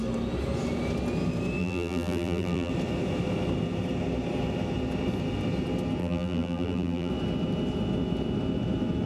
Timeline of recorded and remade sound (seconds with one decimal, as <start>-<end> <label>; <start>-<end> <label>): 0.0-1.6 recorded; 1.6-2.7 remade; 2.7-6.0 recorded; 6.0-7.1 remade; 7.1-9.1 recorded